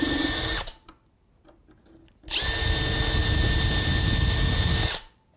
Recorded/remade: recorded